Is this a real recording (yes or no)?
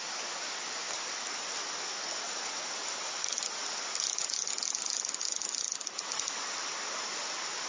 yes